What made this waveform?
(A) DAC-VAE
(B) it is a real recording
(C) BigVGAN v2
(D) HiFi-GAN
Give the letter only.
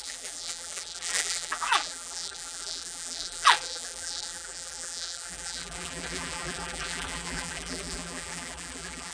C